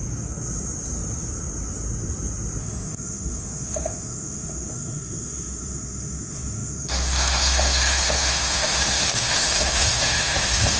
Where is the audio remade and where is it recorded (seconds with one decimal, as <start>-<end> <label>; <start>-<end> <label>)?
0.0-2.6 recorded; 2.6-10.8 remade